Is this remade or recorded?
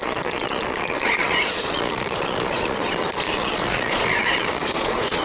remade